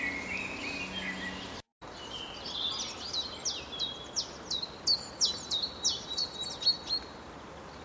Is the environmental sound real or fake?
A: real